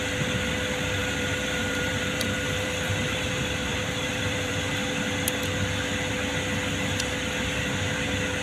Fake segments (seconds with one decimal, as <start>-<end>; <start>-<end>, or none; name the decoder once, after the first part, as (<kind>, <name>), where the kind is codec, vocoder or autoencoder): 1.0-3.3 (vocoder, BigVGAN v2); 3.7-4.7

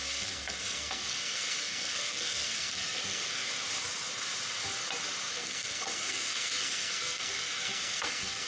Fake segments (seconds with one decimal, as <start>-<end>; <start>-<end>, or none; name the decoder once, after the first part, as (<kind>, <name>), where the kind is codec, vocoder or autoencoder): 0.0-3.5 (codec, SNAC); 5.3-8.5

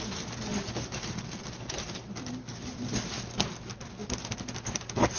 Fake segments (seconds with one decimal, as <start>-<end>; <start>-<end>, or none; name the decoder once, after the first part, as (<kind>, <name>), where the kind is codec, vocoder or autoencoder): 0.5-2.9 (vocoder, BigVGAN v2)